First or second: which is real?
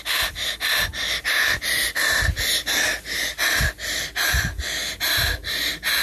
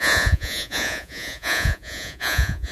first